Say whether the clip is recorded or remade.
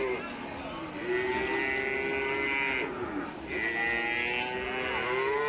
recorded